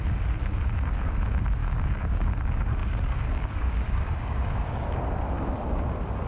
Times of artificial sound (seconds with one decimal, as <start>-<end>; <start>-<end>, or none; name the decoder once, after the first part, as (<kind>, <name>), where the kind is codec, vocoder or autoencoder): 1.6-2.3 (codec, DAC); 2.8-4.9